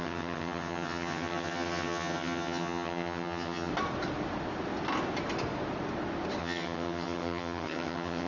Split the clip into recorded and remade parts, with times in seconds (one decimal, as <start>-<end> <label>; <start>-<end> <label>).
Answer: 0.0-3.7 remade; 3.7-6.4 recorded; 6.4-8.3 remade